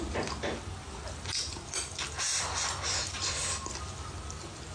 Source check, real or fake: real